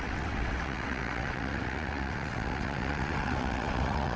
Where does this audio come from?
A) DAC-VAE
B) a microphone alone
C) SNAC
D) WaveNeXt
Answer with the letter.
D